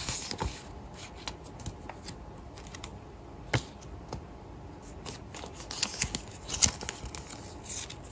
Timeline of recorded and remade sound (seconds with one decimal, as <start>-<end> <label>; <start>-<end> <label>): 0.0-8.1 recorded